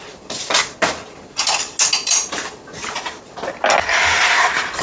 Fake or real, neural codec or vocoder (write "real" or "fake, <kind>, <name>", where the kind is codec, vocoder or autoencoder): real